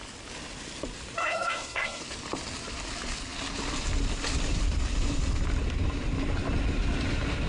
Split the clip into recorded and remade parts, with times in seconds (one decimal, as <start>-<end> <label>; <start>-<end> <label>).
0.0-1.2 recorded; 1.2-2.0 remade; 2.0-7.5 recorded